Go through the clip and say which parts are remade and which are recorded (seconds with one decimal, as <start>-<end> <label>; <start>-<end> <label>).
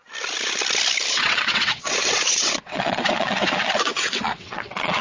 0.0-1.1 recorded; 1.1-5.0 remade